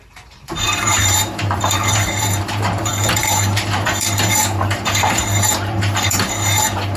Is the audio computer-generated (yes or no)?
yes